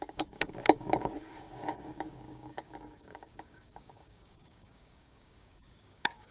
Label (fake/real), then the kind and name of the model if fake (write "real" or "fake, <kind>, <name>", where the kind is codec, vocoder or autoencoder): fake, codec, DAC